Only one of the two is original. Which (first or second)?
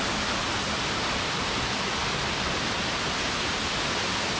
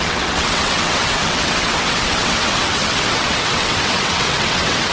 first